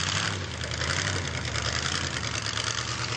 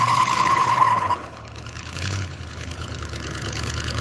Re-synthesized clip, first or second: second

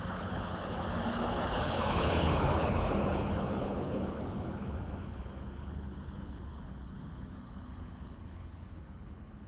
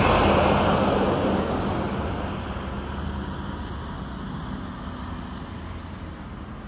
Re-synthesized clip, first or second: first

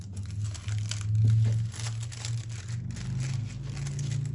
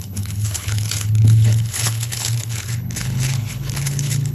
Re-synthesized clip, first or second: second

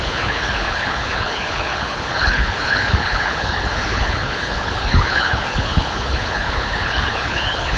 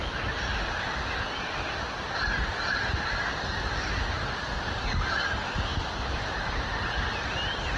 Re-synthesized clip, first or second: first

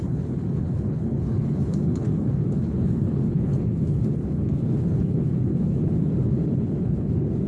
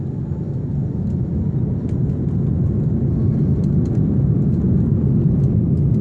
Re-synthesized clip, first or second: first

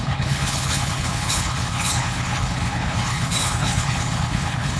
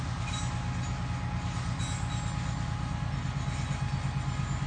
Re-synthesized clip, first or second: first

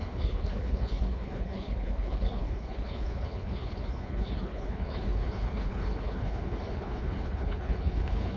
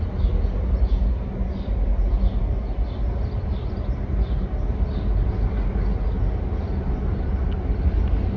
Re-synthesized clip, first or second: first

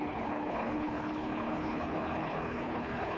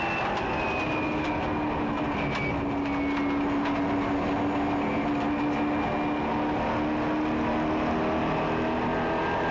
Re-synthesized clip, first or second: first